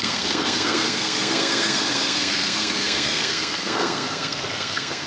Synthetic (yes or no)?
yes